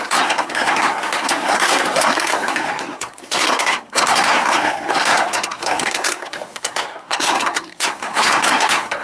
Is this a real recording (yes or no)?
no